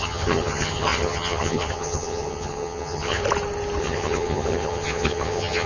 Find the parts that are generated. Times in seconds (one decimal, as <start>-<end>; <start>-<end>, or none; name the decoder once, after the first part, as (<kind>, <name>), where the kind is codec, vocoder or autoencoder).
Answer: 0.0-3.2 (vocoder, HiFi-GAN); 3.8-5.7